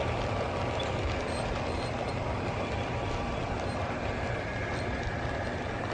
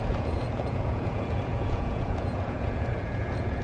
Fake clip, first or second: second